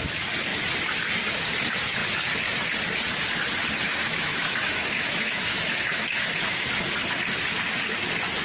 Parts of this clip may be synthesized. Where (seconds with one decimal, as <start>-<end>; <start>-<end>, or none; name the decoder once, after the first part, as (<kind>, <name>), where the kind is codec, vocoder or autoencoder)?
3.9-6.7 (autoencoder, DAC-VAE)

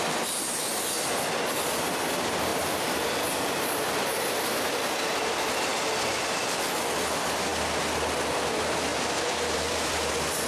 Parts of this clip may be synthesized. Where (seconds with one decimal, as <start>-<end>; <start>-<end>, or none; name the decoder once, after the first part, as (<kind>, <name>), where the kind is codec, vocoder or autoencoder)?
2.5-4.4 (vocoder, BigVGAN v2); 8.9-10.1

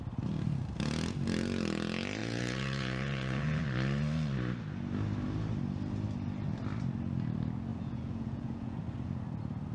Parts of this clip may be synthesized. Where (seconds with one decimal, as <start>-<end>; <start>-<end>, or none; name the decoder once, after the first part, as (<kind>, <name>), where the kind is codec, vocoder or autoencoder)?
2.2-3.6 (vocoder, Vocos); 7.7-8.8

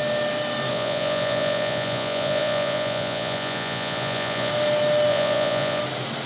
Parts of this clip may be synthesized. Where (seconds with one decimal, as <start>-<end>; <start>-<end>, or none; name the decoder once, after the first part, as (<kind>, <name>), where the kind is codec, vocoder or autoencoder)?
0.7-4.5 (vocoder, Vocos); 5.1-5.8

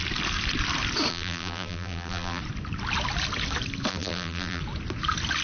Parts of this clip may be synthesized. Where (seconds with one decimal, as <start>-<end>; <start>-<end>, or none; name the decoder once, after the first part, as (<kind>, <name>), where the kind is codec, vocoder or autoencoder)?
1.1-2.4 (vocoder, BigVGAN v2); 3.9-4.6

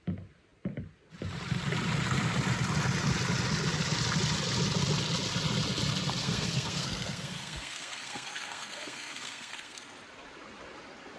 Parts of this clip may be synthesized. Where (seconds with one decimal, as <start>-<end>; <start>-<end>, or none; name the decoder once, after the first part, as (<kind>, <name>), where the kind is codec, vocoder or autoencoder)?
6.2-9.8 (codec, SNAC)